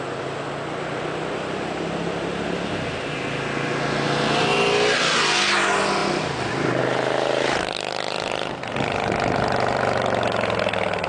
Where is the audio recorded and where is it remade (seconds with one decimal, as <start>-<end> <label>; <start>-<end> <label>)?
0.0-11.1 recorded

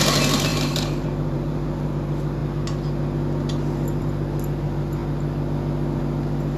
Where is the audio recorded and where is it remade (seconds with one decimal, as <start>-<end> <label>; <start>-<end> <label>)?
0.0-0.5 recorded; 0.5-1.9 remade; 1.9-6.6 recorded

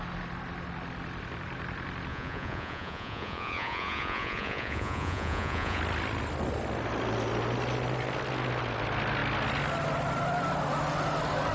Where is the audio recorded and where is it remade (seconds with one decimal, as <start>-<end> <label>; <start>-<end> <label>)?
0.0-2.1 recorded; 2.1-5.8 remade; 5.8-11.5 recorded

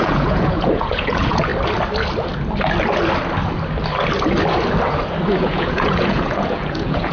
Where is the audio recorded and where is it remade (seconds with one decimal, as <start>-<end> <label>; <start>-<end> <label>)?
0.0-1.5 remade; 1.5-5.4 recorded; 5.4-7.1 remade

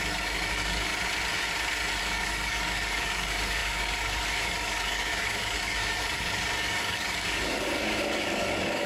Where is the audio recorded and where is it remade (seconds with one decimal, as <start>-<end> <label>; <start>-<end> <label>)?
0.0-0.9 remade; 0.9-2.0 recorded; 2.0-8.9 remade

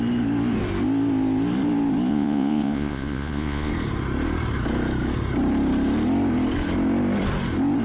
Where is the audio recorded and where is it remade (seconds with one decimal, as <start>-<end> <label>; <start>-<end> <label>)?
0.0-2.1 recorded; 2.1-3.7 remade; 3.7-7.8 recorded